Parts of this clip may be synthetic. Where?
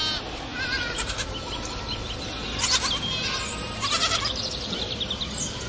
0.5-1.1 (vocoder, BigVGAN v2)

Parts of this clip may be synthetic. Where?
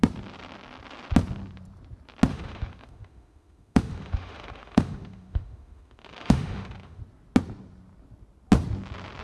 2.3-7.0 (autoencoder, DAC-VAE)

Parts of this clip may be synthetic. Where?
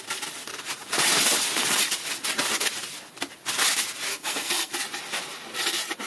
4.1-4.7 (codec, SNAC)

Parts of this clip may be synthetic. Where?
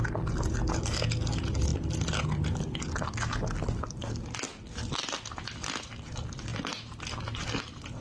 none